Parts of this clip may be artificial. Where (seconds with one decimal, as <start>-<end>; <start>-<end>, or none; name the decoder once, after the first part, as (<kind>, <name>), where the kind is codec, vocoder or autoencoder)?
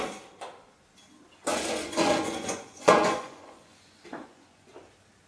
1.5-4.7 (vocoder, Vocos)